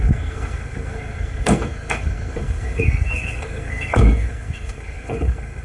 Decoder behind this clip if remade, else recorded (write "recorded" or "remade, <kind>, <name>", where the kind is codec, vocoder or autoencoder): remade, codec, SNAC